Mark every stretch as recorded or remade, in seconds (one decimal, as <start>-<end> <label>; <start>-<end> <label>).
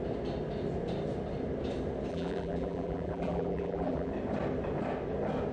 0.0-2.1 recorded; 2.1-4.1 remade; 4.1-5.5 recorded